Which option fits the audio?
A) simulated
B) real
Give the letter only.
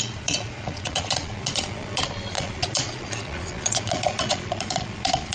A